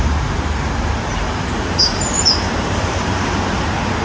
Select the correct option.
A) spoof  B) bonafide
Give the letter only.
A